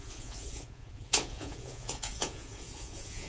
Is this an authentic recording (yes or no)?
no